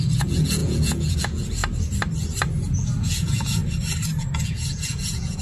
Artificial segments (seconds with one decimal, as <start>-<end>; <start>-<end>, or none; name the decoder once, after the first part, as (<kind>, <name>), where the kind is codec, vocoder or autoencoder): 0.0-1.6 (vocoder, Vocos); 3.0-3.6; 4.2-5.4